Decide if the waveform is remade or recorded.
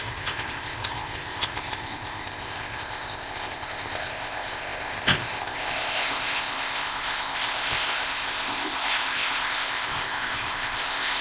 remade